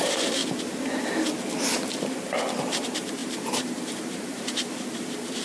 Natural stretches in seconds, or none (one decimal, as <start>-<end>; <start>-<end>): 0.4-2.0